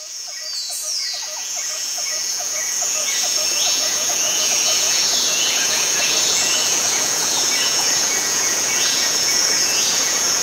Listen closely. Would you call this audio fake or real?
fake